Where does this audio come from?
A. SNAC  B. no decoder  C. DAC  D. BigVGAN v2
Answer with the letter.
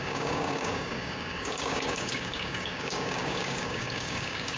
C